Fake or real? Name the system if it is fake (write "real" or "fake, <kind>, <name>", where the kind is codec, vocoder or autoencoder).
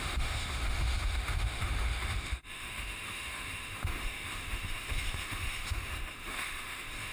fake, autoencoder, DAC-VAE